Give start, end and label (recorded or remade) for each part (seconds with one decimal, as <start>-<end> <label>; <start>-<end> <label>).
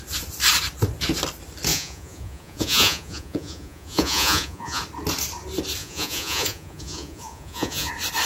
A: 0.0-1.7 recorded; 1.7-4.8 remade; 4.8-5.8 recorded; 5.8-7.9 remade; 7.9-8.3 recorded